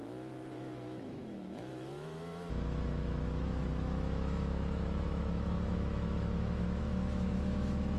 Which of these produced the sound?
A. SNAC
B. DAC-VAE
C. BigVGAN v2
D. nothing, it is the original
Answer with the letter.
B